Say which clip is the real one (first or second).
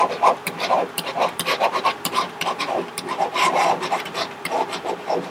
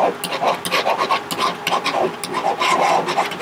second